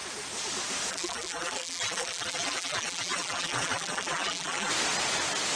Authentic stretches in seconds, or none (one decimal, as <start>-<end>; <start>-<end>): 0.0-0.9; 4.7-5.6